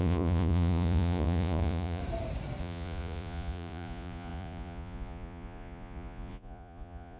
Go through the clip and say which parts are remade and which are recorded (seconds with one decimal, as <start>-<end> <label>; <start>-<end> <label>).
0.0-2.0 remade; 2.0-2.6 recorded; 2.6-7.2 remade